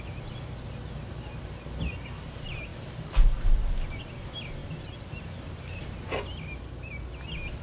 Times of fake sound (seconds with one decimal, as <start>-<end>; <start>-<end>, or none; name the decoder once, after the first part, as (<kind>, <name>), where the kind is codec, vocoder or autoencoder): none